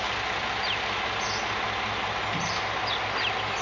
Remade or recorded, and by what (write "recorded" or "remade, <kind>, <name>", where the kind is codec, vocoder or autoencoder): recorded